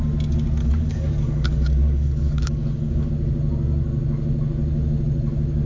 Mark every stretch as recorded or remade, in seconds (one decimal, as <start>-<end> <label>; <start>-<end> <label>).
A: 0.0-0.6 recorded; 0.6-3.1 remade; 3.1-5.7 recorded